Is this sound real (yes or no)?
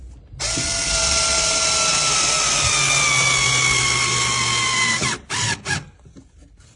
yes